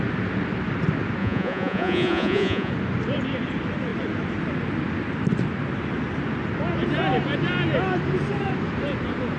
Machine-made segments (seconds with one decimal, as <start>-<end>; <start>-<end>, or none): 1.2-2.7